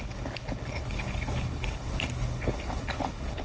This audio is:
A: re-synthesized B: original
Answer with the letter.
A